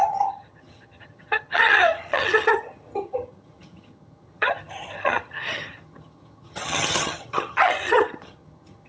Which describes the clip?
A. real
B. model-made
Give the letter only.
B